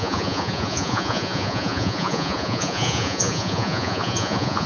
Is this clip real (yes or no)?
no